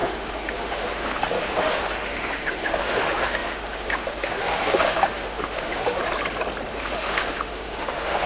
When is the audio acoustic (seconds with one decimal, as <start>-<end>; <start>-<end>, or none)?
6.0-6.7